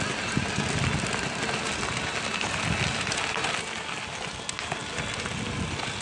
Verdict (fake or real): real